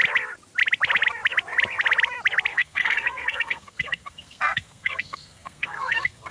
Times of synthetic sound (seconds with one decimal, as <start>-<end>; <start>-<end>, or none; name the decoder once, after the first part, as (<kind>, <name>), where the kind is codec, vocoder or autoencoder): 2.5-6.3 (codec, SNAC)